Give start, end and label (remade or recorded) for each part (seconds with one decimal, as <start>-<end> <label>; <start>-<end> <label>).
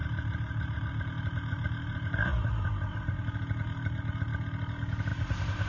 0.0-3.2 remade; 3.2-5.1 recorded; 5.1-5.7 remade